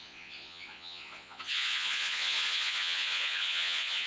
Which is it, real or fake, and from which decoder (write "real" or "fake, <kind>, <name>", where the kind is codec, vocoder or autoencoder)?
fake, vocoder, Vocos